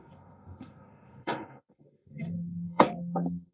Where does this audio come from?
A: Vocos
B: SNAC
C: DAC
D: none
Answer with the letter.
B